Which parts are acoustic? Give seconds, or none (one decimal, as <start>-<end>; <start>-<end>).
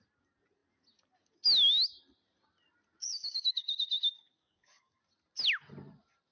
0.0-3.0; 5.0-6.3